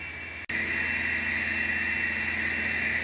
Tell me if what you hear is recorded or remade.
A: recorded